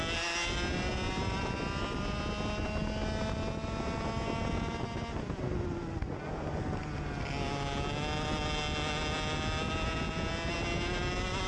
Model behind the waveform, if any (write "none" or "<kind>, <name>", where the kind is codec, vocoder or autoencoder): none